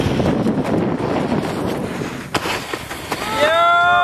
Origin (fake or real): real